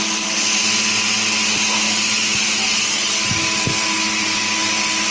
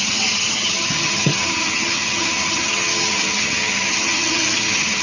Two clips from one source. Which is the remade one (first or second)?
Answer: second